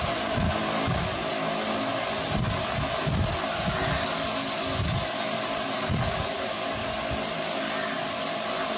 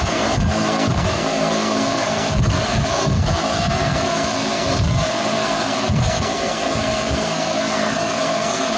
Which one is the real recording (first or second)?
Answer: first